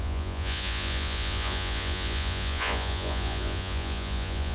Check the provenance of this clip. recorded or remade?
remade